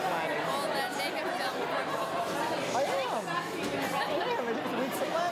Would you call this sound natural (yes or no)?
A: yes